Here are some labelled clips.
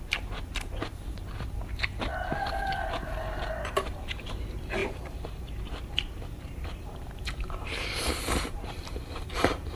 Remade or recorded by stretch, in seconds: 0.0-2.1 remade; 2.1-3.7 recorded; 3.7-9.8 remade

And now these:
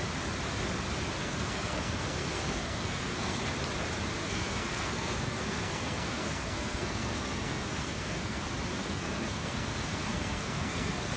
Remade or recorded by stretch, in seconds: 0.0-1.2 recorded; 1.2-3.4 remade; 3.4-4.2 recorded; 4.2-8.4 remade; 8.4-8.8 recorded; 8.8-11.2 remade

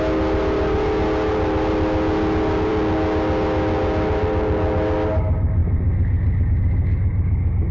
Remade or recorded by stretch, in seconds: 0.0-7.7 recorded

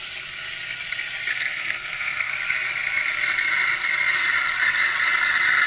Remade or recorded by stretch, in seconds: 0.0-1.3 recorded; 1.3-2.3 remade; 2.3-5.7 recorded